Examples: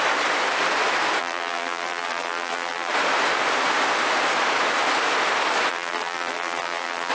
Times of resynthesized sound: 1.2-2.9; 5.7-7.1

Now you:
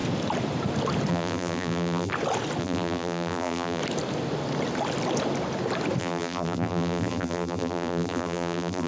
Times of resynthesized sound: 1.1-2.1; 2.6-3.8; 6.0-8.9

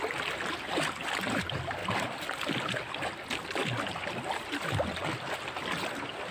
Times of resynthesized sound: none

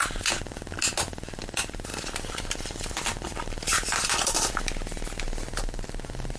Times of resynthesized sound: 1.9-4.6

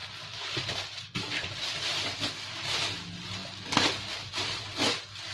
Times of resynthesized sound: none